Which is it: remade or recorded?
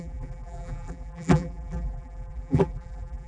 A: remade